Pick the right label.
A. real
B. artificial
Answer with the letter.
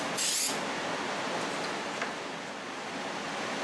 A